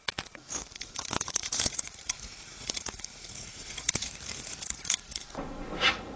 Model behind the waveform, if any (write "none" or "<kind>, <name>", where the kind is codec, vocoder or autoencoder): vocoder, Vocos